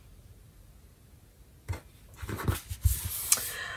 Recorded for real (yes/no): yes